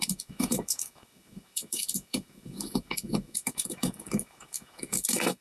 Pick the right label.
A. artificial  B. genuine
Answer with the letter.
A